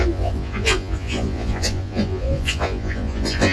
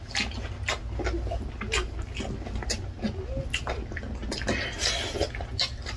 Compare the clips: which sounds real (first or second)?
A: second